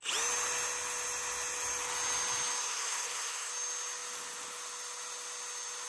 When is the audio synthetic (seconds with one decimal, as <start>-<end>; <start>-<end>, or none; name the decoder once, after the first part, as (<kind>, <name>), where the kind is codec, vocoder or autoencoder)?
2.6-3.5 (codec, SNAC)